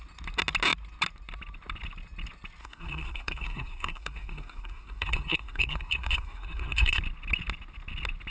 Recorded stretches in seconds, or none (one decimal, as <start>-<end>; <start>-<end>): 0.0-2.6; 7.0-8.3